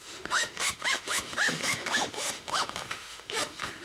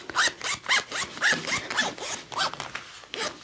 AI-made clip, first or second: first